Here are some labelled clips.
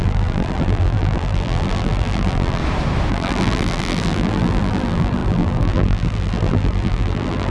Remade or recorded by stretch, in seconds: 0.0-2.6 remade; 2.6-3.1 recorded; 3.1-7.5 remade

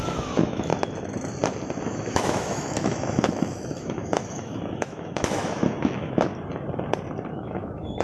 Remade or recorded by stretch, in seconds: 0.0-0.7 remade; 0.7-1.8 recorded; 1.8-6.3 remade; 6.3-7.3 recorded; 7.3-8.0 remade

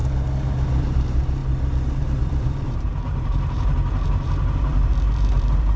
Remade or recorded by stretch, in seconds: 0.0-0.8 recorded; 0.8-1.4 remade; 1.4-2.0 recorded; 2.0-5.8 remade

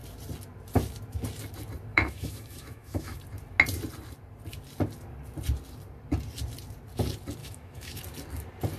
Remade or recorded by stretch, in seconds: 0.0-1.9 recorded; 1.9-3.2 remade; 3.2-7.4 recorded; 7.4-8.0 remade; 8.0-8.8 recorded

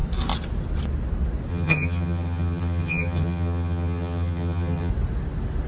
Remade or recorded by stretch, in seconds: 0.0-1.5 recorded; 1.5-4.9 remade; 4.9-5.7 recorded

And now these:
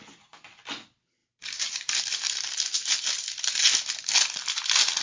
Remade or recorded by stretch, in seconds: 0.0-1.2 recorded; 1.2-3.6 remade; 3.6-5.0 recorded

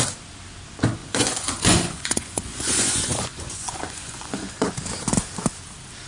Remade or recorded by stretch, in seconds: 0.0-1.0 recorded; 1.0-4.7 remade; 4.7-6.1 recorded